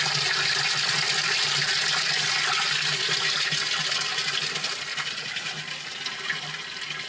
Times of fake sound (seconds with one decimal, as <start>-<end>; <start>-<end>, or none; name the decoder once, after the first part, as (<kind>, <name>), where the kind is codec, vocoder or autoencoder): none